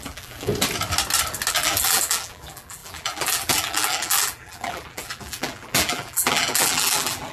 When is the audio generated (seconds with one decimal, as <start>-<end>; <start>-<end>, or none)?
0.0-0.5; 1.5-7.3